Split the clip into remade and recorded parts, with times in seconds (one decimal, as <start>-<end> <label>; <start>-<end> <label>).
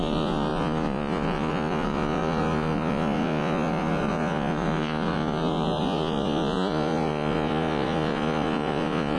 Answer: 0.0-9.2 remade